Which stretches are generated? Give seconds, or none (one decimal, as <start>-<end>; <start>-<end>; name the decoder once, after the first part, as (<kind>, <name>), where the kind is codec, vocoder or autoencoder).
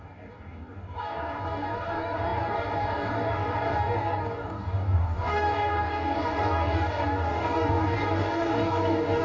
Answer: 0.0-9.2 (codec, DAC)